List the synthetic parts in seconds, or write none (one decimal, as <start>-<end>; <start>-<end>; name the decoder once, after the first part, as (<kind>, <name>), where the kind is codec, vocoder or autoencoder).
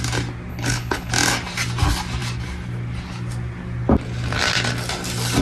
0.5-1.1 (codec, HILCodec)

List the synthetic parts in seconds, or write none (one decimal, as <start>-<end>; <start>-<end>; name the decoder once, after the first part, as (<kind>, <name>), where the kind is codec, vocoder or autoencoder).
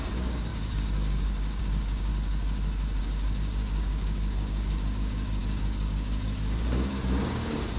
0.0-2.1 (codec, DAC); 3.0-7.8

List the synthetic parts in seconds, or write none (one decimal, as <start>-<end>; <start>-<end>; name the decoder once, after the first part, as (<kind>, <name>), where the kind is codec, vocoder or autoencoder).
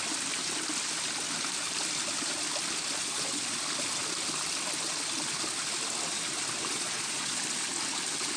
3.0-3.6 (vocoder, Vocos); 6.7-7.4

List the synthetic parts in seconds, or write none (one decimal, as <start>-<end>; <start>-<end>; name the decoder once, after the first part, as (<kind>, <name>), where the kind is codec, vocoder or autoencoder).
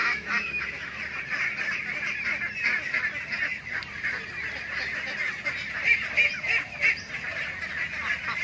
0.0-1.0 (autoencoder, DAC-VAE)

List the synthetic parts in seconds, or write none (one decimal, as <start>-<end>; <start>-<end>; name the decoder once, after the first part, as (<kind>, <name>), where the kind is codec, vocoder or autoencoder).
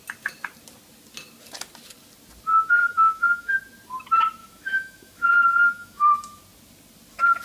2.8-3.5 (autoencoder, DAC-VAE); 4.4-6.4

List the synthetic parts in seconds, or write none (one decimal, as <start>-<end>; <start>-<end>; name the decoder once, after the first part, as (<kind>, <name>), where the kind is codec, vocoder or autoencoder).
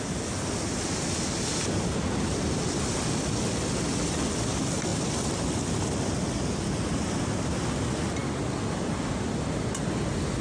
none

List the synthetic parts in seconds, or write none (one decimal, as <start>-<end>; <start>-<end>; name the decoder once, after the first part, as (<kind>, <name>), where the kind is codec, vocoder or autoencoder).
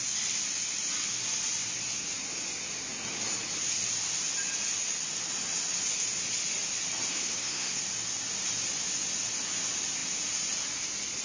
7.1-7.8 (codec, SNAC)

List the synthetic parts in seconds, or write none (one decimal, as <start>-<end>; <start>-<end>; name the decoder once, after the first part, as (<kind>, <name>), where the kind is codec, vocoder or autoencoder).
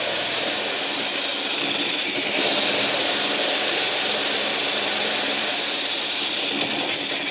4.2-6.4 (vocoder, BigVGAN v2)